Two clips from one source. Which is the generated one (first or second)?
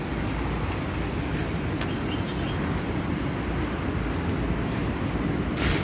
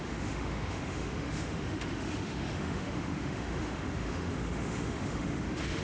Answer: second